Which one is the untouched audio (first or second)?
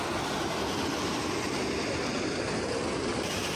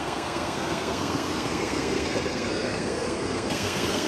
first